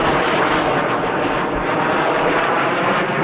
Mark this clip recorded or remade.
recorded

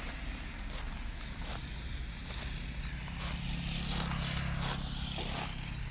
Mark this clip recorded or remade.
recorded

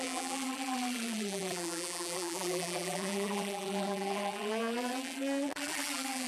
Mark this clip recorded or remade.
remade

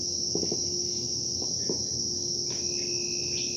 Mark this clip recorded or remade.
recorded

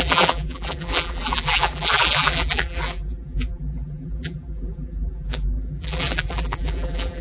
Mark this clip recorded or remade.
remade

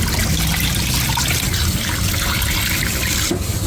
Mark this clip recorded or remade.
recorded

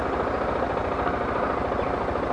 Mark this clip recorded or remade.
recorded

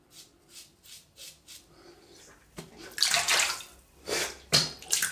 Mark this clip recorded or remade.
remade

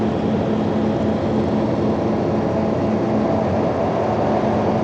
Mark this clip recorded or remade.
recorded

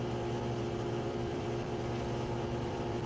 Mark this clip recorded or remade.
remade